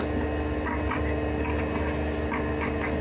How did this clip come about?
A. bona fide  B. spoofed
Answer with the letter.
A